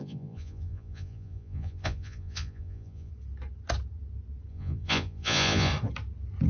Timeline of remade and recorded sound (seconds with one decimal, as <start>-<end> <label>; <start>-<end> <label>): 0.0-3.1 remade; 3.1-4.5 recorded; 4.5-5.7 remade; 5.7-6.5 recorded